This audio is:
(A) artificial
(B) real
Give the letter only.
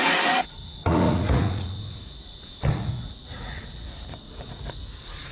A